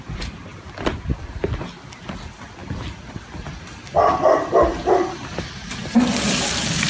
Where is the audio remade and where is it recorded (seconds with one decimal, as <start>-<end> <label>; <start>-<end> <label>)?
0.0-6.9 recorded